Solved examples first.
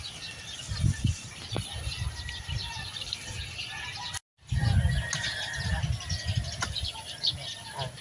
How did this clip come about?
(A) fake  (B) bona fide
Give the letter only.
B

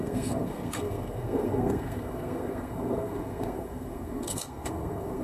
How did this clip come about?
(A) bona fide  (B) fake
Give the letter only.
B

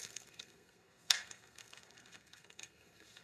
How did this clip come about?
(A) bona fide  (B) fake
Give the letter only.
B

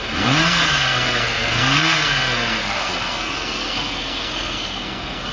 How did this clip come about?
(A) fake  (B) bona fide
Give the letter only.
A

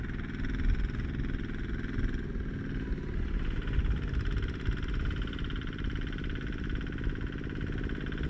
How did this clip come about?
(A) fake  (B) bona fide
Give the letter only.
B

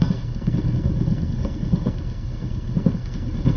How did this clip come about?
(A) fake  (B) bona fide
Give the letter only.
A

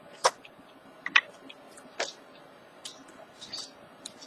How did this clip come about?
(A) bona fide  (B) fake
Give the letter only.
A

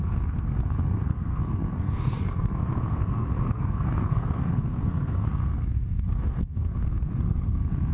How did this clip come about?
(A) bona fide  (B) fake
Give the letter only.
B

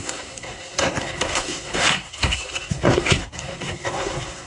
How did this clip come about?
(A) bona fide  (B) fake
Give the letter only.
B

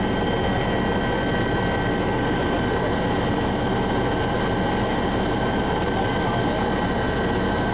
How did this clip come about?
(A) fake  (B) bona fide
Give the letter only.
B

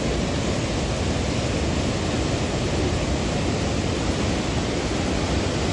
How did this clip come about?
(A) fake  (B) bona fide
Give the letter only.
B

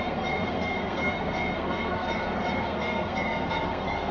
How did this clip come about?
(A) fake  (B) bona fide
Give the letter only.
A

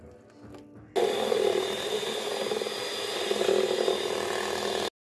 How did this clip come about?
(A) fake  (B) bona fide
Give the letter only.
B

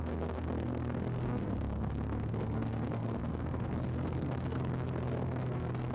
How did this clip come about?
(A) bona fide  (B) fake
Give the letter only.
B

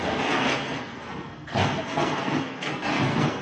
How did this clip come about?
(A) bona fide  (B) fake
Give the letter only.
B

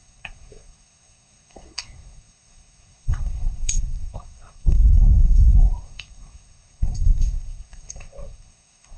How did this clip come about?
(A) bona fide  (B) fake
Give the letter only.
B